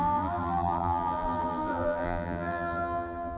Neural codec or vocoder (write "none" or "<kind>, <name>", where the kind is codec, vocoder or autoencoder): vocoder, BigVGAN v2